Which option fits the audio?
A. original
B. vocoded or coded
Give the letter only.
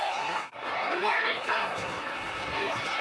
B